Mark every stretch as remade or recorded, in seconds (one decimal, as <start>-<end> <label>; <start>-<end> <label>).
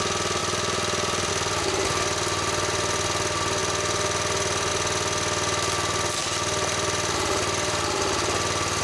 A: 0.0-0.4 recorded; 0.4-1.3 remade; 1.3-3.6 recorded; 3.6-4.7 remade; 4.7-6.2 recorded; 6.2-8.8 remade